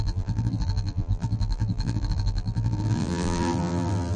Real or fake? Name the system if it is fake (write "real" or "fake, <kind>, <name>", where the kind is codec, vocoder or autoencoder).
fake, vocoder, BigVGAN v2